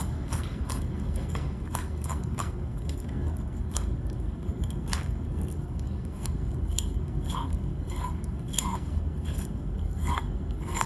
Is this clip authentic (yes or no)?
no